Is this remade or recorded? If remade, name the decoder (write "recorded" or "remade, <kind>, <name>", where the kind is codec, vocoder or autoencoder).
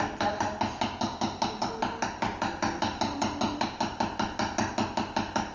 recorded